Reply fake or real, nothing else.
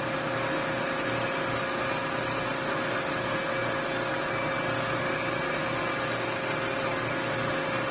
real